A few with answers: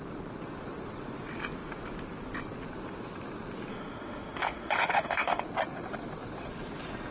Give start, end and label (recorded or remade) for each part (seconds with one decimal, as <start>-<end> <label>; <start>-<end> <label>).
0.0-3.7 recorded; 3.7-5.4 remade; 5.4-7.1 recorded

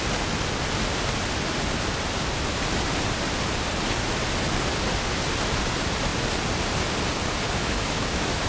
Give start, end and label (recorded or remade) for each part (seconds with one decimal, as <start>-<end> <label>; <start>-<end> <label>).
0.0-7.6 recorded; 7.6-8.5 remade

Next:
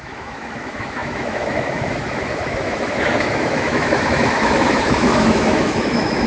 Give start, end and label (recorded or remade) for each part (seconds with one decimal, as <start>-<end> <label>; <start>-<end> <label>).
0.0-6.3 remade

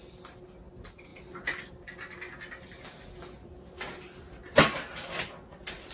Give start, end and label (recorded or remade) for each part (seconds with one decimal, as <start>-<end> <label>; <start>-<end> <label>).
0.0-5.9 recorded

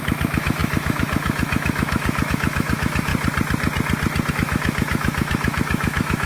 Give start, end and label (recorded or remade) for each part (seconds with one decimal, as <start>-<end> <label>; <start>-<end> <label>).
0.0-3.1 remade; 3.1-4.3 recorded; 4.3-6.3 remade

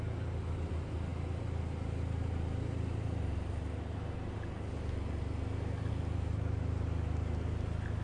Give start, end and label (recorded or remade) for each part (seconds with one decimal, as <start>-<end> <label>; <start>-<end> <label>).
0.0-8.0 recorded